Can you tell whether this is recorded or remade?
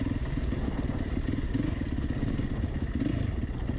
recorded